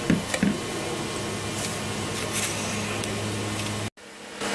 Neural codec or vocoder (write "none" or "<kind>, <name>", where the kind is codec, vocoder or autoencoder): none